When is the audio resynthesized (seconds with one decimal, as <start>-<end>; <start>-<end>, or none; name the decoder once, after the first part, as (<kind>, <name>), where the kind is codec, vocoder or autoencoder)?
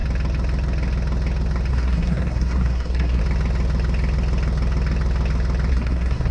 1.7-3.2 (codec, SNAC); 5.7-6.3